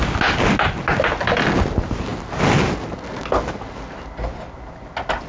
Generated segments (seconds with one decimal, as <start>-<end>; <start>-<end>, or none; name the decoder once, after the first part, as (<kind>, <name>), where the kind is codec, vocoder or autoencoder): none

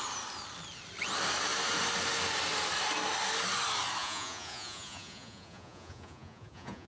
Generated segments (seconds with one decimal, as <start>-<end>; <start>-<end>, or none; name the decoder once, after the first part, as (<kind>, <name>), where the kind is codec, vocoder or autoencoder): 4.0-6.9 (vocoder, Vocos)

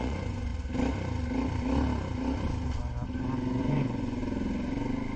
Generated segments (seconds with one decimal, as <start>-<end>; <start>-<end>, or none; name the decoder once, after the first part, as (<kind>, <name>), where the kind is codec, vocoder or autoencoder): 0.0-0.5 (vocoder, Vocos); 3.6-4.2

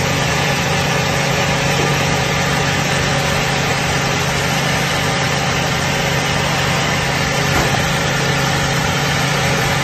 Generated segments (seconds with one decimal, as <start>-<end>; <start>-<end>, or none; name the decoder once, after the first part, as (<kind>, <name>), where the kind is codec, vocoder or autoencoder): 0.0-3.7 (vocoder, Vocos); 8.8-9.8